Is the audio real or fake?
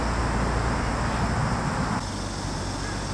real